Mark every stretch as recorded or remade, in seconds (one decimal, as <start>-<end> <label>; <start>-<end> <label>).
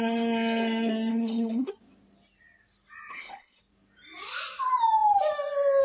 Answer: 0.0-1.1 recorded; 1.1-1.7 remade; 1.7-3.1 recorded; 3.1-3.6 remade; 3.6-5.8 recorded